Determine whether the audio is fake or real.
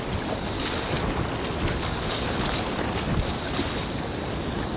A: real